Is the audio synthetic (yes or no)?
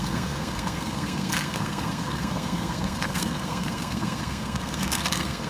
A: yes